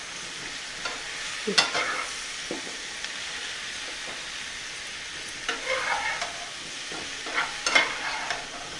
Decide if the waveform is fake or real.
real